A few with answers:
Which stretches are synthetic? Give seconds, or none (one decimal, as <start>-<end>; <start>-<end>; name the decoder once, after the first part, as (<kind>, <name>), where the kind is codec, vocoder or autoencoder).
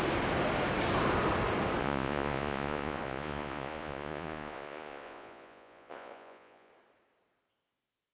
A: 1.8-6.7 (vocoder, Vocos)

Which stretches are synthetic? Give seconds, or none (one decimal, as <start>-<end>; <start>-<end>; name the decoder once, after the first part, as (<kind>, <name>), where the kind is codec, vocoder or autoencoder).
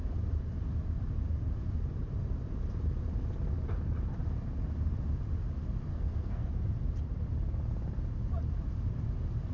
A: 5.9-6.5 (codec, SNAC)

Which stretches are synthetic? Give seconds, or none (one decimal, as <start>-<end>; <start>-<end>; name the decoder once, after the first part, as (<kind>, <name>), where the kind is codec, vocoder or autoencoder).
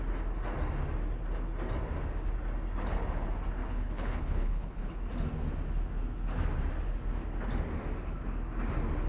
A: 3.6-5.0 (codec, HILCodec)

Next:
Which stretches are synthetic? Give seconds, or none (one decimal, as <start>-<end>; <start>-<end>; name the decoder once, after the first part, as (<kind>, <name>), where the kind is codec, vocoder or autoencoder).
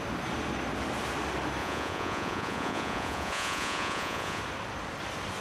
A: 1.6-4.4 (vocoder, Vocos)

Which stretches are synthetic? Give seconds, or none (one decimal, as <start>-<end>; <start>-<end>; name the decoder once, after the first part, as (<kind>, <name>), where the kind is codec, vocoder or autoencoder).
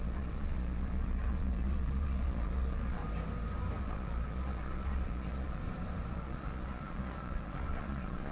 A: 0.0-3.0 (vocoder, Vocos); 3.8-5.6; 6.1-8.3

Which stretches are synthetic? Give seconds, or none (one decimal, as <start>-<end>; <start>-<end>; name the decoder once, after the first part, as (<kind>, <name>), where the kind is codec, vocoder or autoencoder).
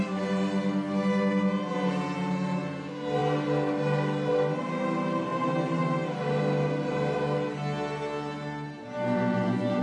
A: none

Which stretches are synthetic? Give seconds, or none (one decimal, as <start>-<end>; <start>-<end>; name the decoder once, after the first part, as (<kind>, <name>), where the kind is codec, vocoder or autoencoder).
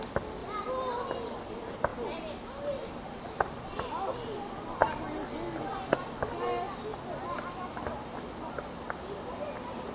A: none